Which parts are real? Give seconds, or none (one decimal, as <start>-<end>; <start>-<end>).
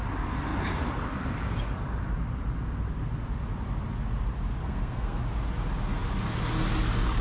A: 0.0-4.6; 5.2-7.2